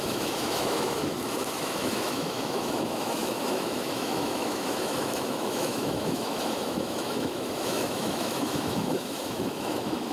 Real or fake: fake